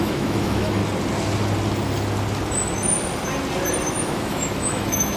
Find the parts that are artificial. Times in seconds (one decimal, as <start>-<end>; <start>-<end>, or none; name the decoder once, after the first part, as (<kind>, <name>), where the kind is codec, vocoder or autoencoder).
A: 0.0-0.8 (autoencoder, DAC-VAE); 3.9-5.2